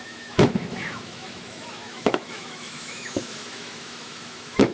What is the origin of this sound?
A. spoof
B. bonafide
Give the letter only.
A